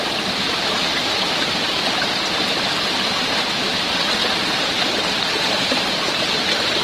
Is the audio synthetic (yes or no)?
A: yes